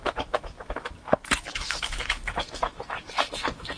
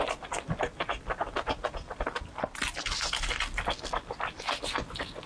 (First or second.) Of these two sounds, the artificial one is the first